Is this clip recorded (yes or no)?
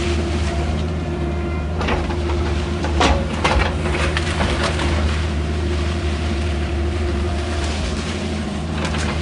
no